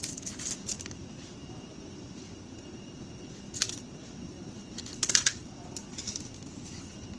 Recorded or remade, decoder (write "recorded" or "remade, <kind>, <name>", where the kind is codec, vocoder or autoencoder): remade, vocoder, BigVGAN v2